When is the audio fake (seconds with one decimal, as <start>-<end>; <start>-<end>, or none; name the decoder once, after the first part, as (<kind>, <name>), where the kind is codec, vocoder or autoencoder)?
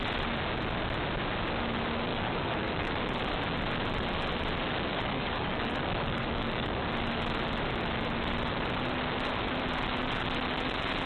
2.1-2.9 (codec, DAC); 4.9-6.8